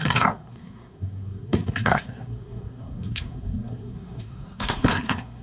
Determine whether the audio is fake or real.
fake